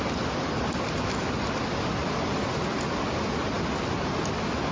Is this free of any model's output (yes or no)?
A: yes